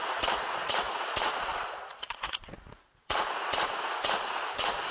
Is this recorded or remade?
remade